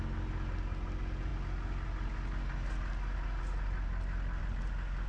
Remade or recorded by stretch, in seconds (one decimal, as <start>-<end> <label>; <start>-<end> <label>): 0.0-5.1 recorded